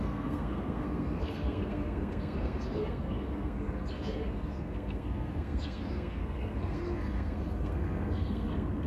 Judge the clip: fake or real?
fake